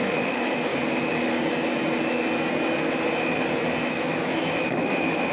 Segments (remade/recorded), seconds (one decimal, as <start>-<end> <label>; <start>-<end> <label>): 0.0-0.7 remade; 0.7-3.9 recorded; 3.9-5.3 remade